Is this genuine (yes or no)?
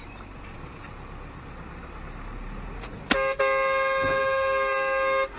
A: yes